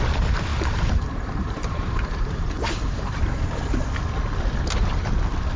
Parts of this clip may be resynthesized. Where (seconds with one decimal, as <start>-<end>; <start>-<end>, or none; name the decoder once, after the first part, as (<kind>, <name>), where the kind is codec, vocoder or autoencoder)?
0.5-3.2 (vocoder, BigVGAN v2)